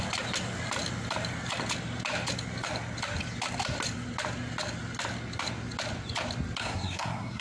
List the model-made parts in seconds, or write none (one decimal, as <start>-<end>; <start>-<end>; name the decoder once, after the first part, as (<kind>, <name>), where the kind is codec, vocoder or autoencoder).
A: 6.6-7.4 (codec, SNAC)